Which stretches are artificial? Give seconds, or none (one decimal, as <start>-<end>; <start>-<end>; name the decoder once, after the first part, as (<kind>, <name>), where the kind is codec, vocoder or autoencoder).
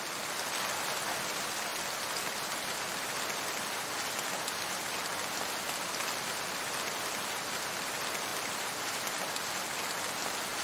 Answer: 8.3-9.5 (vocoder, BigVGAN v2)